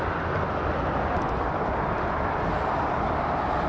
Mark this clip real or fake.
real